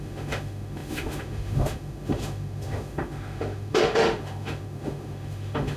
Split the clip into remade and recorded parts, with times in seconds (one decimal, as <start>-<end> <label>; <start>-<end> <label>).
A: 0.0-5.8 remade